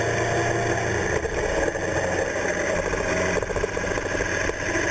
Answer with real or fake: real